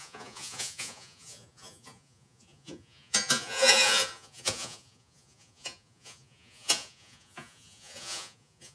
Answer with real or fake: fake